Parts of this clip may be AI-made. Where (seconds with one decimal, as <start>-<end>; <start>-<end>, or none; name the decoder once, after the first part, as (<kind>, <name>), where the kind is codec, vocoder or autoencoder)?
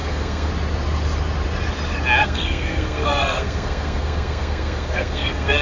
0.0-0.5 (codec, SNAC); 2.2-5.6